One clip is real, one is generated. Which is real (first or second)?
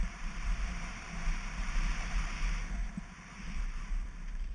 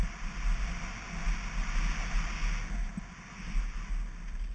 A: second